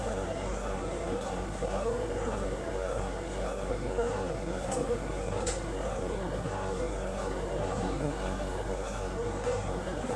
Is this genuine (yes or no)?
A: no